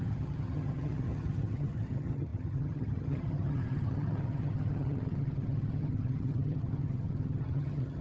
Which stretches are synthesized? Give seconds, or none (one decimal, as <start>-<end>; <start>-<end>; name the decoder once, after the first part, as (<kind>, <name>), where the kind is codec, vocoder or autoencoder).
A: 0.0-8.0 (vocoder, HiFi-GAN)